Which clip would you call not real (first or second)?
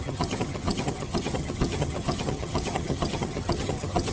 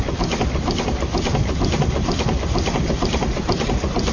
first